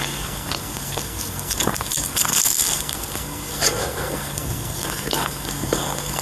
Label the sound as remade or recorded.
remade